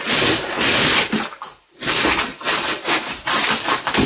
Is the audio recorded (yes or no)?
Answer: yes